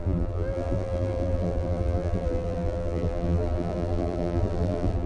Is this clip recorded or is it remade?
remade